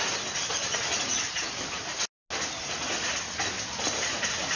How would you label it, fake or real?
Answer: real